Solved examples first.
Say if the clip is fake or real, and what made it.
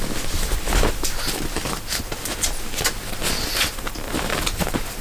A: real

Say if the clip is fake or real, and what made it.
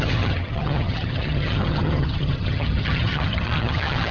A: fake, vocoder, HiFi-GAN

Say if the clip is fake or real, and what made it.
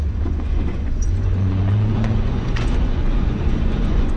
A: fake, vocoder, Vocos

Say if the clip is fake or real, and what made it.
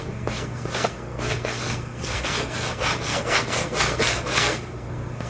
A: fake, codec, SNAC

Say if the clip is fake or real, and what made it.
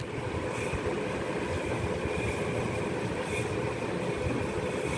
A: real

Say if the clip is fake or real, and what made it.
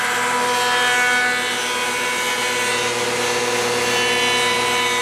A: real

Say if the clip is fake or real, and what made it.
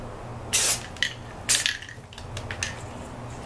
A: real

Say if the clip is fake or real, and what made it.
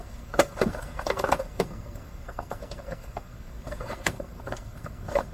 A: fake, codec, SNAC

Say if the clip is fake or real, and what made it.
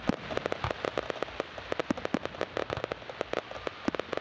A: real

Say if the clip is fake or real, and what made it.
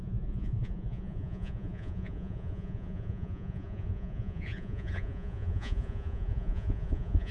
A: fake, vocoder, Vocos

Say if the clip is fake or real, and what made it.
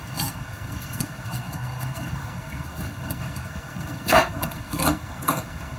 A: fake, codec, SNAC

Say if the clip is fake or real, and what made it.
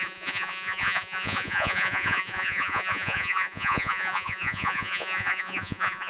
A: fake, vocoder, Vocos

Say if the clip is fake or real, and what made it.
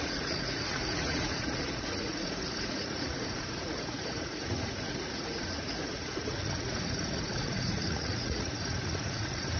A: fake, vocoder, Vocos